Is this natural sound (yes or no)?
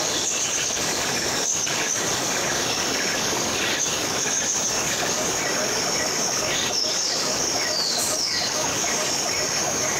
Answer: no